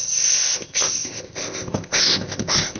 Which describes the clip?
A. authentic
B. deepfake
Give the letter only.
B